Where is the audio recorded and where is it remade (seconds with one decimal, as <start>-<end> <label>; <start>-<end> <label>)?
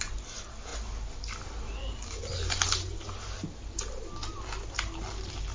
0.0-5.5 recorded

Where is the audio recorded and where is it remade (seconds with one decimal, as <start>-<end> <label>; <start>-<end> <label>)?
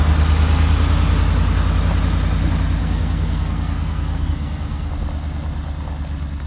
0.0-2.8 recorded; 2.8-4.9 remade; 4.9-6.5 recorded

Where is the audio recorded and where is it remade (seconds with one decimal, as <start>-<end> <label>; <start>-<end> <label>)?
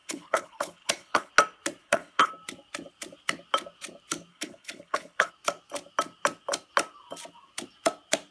0.0-1.3 remade; 1.3-1.8 recorded; 1.8-2.3 remade; 2.3-4.3 recorded; 4.3-5.3 remade; 5.3-8.3 recorded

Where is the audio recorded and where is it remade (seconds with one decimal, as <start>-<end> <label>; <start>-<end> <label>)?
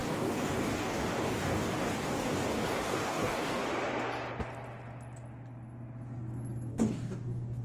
0.0-3.6 remade; 3.6-6.7 recorded; 6.7-7.6 remade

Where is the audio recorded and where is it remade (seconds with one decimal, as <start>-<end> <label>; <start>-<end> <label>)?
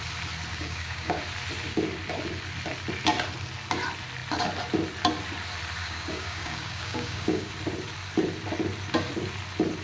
0.0-0.5 recorded; 0.5-1.2 remade; 1.2-5.8 recorded; 5.8-7.5 remade; 7.5-9.8 recorded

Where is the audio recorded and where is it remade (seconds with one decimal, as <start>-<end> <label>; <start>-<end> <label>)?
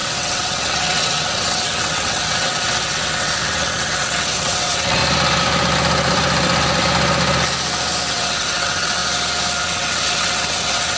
0.0-5.0 remade; 5.0-8.1 recorded; 8.1-9.0 remade; 9.0-9.6 recorded; 9.6-11.0 remade